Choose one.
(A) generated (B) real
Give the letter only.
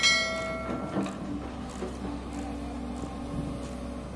B